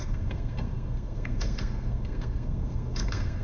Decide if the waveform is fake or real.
fake